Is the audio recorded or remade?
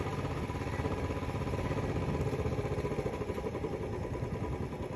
recorded